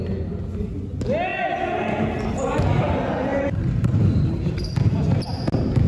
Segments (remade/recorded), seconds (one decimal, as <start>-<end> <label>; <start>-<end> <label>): 0.0-3.3 recorded; 3.3-4.5 remade; 4.5-5.9 recorded